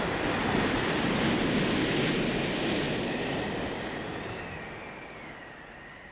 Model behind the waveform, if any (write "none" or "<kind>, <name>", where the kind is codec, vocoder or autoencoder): none